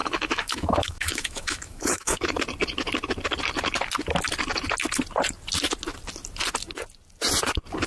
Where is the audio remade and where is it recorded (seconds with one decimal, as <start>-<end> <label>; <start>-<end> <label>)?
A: 0.0-2.4 remade; 2.4-7.9 recorded